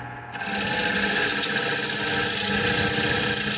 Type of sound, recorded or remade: recorded